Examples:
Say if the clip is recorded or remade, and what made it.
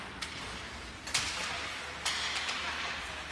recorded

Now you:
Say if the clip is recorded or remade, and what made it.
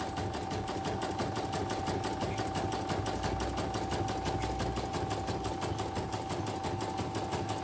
recorded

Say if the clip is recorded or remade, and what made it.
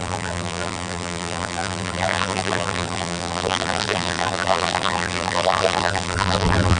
remade, vocoder, BigVGAN v2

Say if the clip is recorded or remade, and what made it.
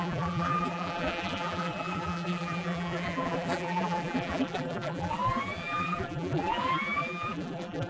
remade, vocoder, BigVGAN v2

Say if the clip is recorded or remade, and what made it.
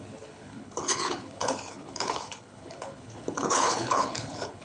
remade, codec, HILCodec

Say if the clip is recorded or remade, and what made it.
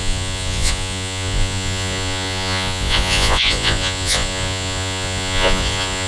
remade, vocoder, Vocos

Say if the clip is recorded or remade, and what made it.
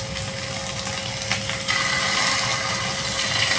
recorded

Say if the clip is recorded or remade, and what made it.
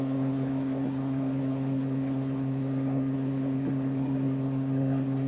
remade, codec, SNAC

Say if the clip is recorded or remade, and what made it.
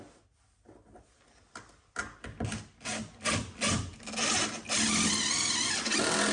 recorded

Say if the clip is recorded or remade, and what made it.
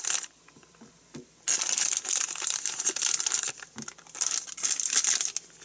recorded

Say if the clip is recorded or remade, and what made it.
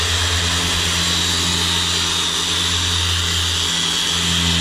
recorded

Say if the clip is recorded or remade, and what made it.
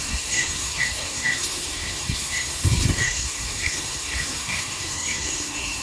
remade, codec, SNAC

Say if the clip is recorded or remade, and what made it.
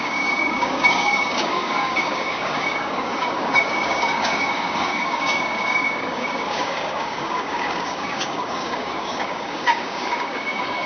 remade, codec, DAC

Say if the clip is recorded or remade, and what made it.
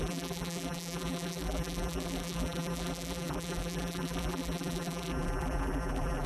remade, vocoder, BigVGAN v2